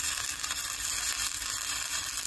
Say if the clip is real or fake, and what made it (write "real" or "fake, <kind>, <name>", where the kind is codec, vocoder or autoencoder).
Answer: real